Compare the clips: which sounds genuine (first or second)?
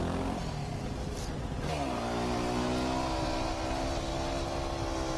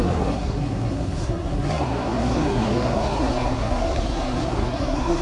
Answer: first